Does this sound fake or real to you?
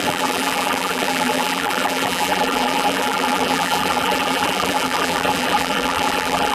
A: fake